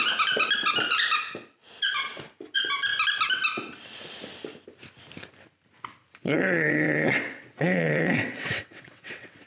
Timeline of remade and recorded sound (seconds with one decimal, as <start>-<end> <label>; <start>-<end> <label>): 0.0-6.0 recorded; 6.0-9.5 remade